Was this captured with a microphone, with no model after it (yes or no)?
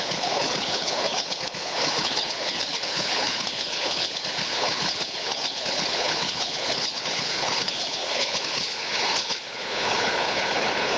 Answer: no